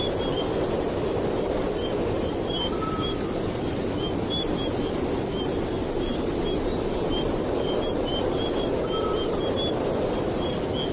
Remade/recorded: recorded